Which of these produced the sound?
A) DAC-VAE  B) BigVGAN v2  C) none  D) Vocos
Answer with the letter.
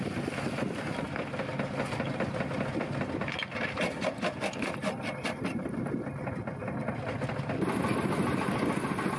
C